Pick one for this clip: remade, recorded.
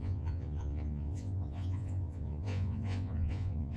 remade